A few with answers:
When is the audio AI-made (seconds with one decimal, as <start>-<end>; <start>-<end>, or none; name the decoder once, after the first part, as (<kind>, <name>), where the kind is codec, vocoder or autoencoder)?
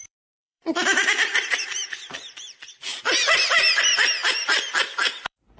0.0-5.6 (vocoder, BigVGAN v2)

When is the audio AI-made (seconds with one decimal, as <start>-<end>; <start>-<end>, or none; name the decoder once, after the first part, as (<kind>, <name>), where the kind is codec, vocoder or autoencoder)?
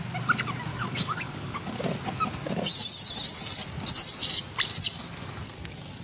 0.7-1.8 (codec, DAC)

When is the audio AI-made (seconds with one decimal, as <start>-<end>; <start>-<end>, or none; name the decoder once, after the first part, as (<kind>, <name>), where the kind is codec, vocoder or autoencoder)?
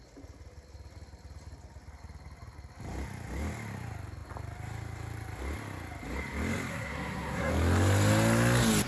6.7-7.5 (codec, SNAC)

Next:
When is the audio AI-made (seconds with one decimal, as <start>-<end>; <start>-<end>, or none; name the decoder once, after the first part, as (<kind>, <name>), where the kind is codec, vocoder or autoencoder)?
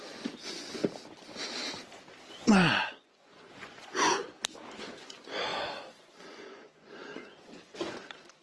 0.0-0.8 (vocoder, Vocos); 2.3-4.2; 4.8-8.4